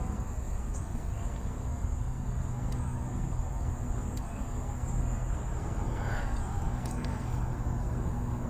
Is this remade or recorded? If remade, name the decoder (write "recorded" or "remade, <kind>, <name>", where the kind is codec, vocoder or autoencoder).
remade, codec, SNAC